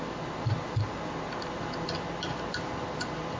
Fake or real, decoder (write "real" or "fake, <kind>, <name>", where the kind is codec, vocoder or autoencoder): real